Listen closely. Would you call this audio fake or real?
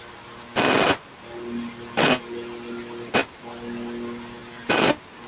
real